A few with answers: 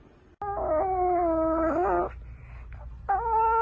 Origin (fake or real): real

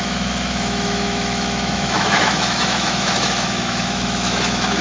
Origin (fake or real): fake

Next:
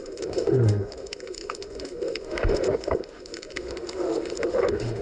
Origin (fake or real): fake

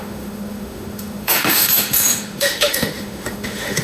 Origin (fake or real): fake